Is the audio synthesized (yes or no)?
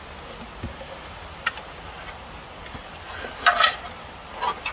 no